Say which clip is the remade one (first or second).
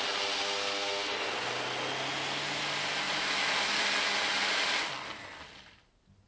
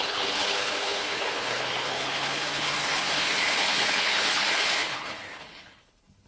second